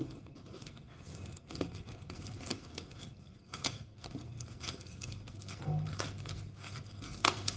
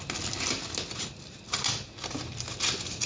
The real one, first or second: second